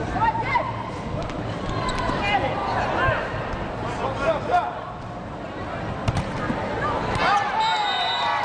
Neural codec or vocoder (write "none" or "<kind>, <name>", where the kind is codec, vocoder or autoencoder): none